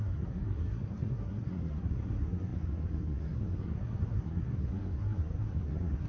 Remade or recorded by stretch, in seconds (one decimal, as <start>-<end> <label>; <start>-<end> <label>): 0.0-6.1 remade